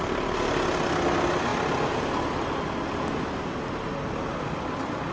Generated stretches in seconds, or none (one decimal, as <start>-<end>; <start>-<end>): none